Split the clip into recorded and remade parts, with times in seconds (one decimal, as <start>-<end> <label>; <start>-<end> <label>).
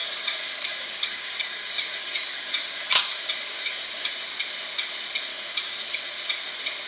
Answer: 0.0-4.1 remade; 4.1-5.3 recorded; 5.3-6.0 remade; 6.0-6.9 recorded